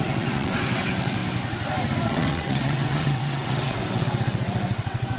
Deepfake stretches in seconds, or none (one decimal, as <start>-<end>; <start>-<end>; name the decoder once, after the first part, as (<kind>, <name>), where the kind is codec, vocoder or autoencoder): 0.0-1.2 (vocoder, WaveNeXt); 2.0-5.2